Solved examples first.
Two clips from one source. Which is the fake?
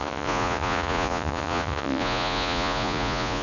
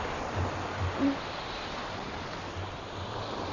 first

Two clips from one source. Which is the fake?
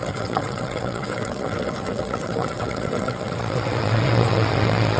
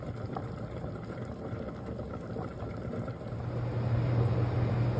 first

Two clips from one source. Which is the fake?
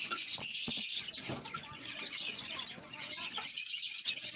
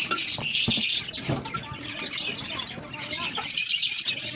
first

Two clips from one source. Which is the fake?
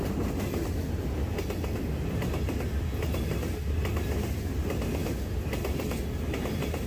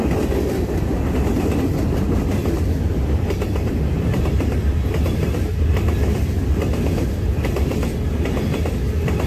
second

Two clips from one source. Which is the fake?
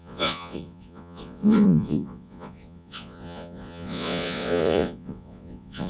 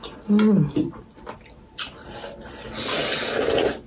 first